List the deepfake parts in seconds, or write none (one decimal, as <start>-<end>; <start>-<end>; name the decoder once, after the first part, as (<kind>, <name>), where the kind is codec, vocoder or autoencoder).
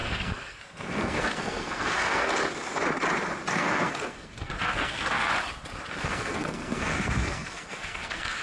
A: 0.0-2.3 (codec, SNAC); 3.5-5.3; 5.9-8.4